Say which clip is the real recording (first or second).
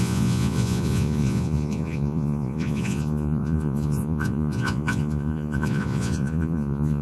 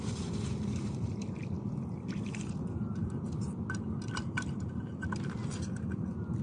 second